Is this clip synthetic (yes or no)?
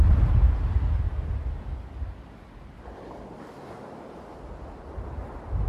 no